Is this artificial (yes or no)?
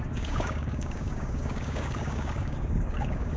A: yes